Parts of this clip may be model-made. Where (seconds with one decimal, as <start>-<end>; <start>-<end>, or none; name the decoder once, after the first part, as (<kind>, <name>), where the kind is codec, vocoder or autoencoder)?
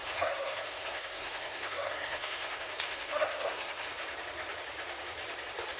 0.0-3.9 (codec, SNAC)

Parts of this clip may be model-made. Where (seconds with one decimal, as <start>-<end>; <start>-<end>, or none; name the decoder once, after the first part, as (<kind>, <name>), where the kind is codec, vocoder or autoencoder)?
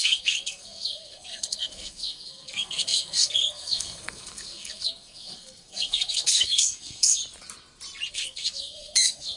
0.0-7.2 (codec, SNAC); 8.1-9.4